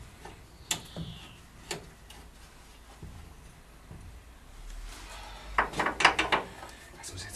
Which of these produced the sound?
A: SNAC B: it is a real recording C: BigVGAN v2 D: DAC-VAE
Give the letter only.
B